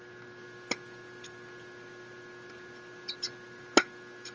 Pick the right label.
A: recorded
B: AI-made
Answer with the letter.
A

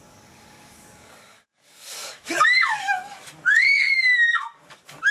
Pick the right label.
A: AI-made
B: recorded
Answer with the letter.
A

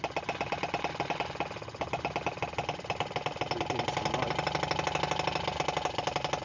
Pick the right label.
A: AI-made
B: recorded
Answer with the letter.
B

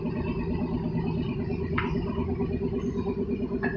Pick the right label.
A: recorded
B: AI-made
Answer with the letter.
A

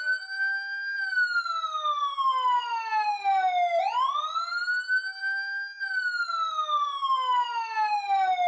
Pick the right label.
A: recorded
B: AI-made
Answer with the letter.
A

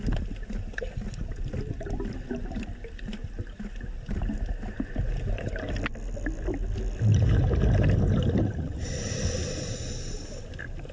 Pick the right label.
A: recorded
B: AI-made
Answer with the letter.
A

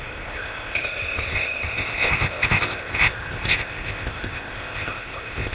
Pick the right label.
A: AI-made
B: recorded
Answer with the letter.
A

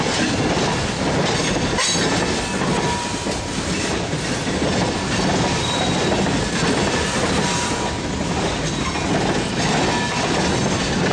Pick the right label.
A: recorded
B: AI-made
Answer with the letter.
A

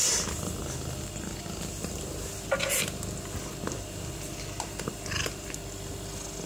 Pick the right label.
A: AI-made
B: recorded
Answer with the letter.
B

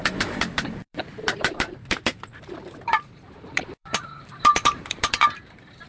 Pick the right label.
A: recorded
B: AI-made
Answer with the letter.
B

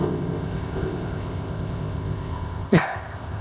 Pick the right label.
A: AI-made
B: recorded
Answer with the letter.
A